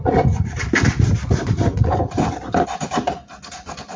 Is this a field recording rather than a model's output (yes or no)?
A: yes